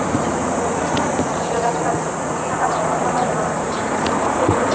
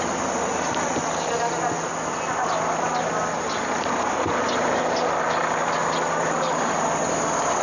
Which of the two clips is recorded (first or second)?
second